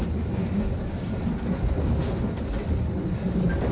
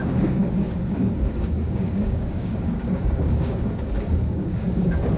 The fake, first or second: second